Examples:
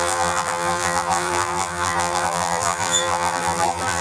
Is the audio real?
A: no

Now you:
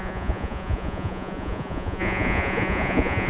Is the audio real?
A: no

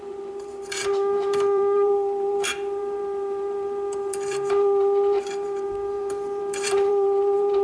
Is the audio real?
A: no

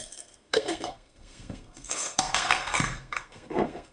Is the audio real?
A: no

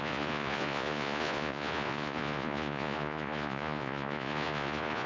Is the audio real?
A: no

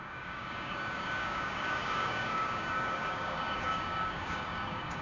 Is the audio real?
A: no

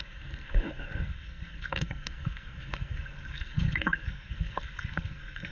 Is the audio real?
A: no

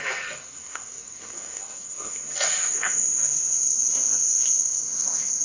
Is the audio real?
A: no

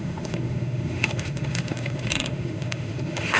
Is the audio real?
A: no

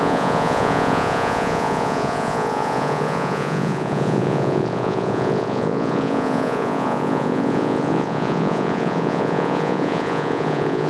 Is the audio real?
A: no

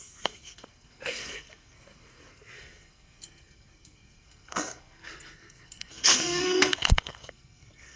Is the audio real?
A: no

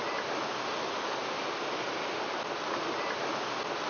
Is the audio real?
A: yes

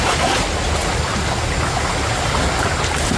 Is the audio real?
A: yes